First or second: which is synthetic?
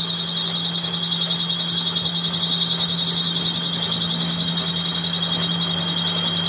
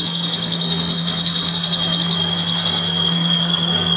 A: second